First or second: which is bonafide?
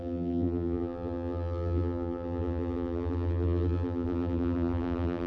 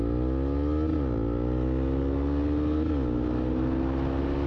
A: second